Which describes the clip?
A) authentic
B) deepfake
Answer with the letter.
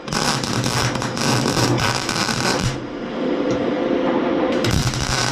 B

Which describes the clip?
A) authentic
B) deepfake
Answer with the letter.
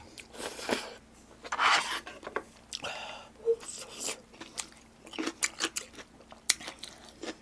A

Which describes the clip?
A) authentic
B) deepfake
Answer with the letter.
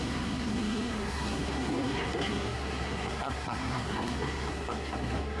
B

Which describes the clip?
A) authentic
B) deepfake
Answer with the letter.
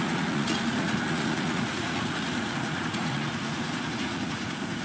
B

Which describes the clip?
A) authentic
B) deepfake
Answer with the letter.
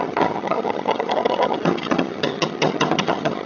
B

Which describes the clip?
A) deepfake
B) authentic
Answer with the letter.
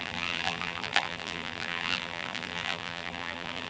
A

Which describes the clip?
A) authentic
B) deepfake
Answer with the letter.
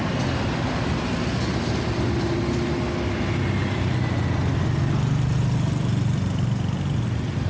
A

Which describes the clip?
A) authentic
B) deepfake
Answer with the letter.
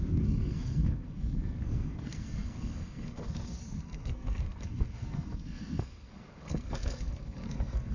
B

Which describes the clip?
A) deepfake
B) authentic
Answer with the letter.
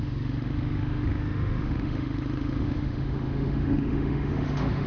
A